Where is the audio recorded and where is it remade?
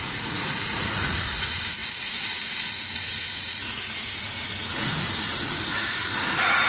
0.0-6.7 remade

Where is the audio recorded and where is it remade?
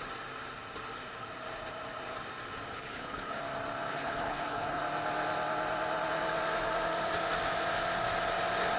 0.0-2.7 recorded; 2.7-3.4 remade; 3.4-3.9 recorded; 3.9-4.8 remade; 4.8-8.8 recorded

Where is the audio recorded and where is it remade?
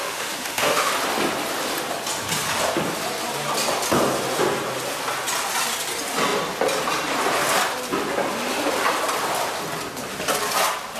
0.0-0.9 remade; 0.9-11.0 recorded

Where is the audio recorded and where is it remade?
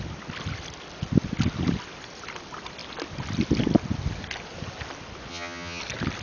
0.0-5.3 recorded; 5.3-5.8 remade; 5.8-6.2 recorded